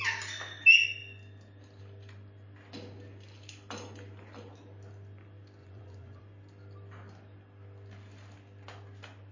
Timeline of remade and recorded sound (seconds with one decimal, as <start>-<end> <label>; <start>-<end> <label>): 0.0-5.6 recorded; 5.6-6.2 remade; 6.2-9.3 recorded